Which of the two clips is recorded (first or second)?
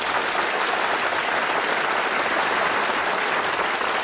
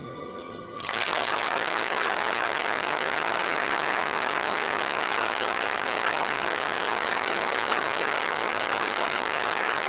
first